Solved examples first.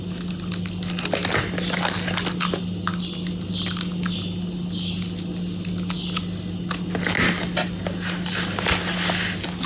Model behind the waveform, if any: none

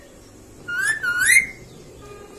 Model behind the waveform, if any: none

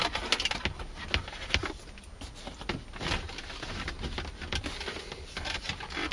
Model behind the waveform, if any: none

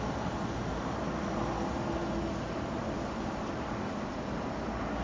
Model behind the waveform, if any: none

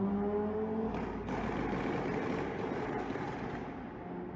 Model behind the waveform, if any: none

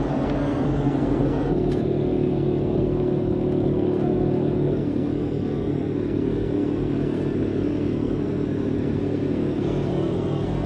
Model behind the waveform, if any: codec, SNAC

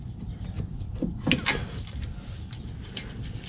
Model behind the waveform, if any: none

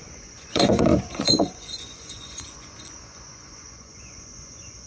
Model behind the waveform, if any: vocoder, Vocos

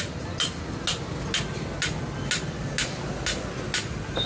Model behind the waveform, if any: none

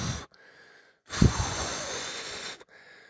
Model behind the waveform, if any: vocoder, Vocos